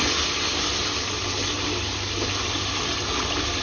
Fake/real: real